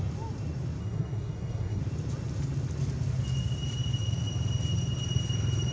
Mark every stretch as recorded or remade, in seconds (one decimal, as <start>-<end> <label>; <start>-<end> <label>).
0.0-0.8 recorded; 0.8-1.8 remade; 1.8-5.7 recorded